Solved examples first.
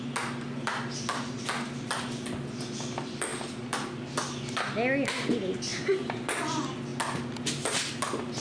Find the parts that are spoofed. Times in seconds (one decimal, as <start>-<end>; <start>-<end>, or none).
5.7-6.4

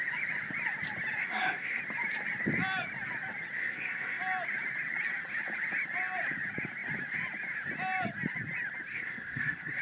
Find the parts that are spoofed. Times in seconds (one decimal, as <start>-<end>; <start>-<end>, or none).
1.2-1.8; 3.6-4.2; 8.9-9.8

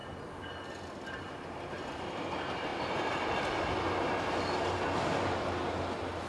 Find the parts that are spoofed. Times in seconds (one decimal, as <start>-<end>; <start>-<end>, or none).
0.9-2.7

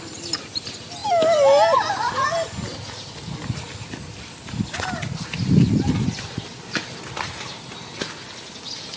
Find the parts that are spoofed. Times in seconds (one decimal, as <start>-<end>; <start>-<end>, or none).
none

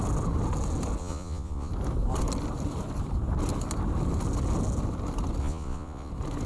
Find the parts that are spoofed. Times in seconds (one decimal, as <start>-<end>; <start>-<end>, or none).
1.0-1.7; 5.4-6.1

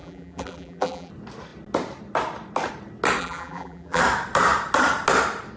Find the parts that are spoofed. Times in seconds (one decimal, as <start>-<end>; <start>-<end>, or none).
0.0-1.1; 3.2-4.0

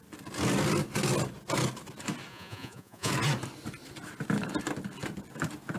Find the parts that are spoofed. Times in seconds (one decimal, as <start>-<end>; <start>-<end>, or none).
2.3-3.1